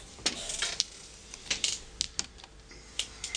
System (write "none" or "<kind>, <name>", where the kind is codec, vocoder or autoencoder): none